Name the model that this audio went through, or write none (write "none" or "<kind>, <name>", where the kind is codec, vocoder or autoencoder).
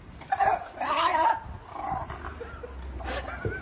none